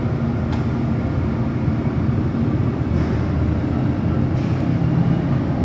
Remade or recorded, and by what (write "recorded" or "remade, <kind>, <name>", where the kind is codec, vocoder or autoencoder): recorded